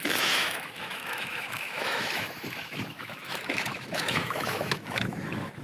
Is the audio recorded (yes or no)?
no